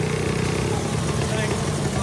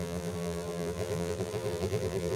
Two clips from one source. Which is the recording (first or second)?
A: first